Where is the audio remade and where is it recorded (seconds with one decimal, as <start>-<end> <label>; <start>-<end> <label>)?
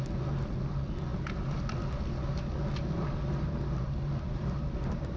0.0-5.2 recorded